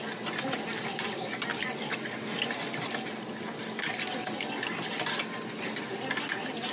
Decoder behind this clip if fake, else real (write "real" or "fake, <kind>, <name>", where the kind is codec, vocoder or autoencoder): real